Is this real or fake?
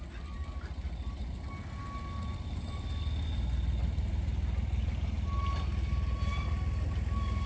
real